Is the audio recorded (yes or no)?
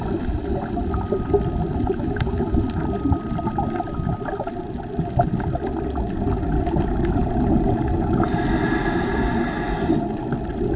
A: yes